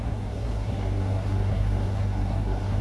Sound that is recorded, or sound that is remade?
remade